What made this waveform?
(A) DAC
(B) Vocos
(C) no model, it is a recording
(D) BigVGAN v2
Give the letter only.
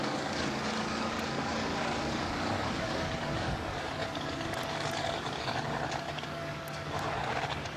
A